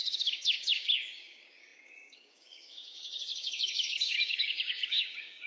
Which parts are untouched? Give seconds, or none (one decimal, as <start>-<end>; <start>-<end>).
none